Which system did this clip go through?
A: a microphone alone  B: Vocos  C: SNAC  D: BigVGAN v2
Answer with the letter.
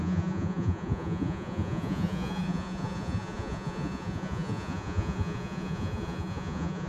B